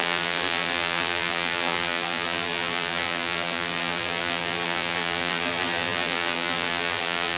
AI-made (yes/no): yes